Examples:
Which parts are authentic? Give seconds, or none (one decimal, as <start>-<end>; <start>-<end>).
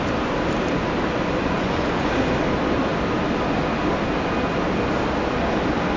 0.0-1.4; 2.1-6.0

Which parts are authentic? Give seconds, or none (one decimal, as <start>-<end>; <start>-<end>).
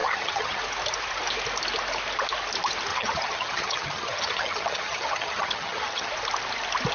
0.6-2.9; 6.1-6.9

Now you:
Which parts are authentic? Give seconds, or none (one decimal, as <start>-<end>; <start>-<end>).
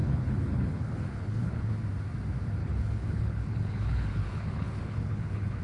1.7-2.6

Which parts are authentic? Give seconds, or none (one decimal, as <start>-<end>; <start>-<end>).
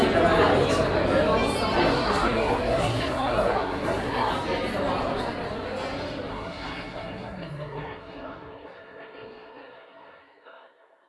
0.0-1.9; 4.3-6.3